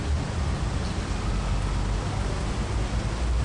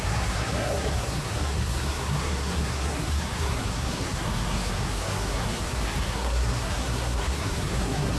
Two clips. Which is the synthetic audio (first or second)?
second